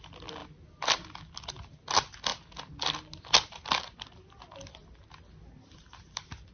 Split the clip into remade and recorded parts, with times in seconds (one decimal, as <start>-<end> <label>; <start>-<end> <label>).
0.0-6.5 recorded